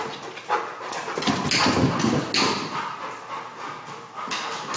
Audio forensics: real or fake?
real